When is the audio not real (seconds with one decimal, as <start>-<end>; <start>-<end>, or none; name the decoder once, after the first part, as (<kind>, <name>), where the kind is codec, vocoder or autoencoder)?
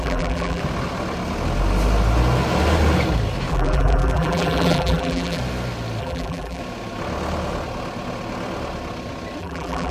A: 0.0-0.6 (vocoder, BigVGAN v2); 3.5-5.4; 6.0-6.6; 9.4-9.9